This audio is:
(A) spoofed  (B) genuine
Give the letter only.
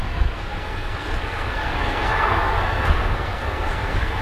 A